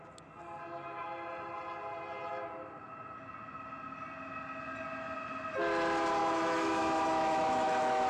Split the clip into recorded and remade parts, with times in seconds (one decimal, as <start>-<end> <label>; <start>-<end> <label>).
0.0-6.2 recorded; 6.2-8.1 remade